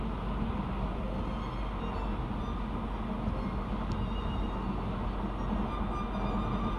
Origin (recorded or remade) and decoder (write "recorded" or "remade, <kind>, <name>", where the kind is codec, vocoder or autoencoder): recorded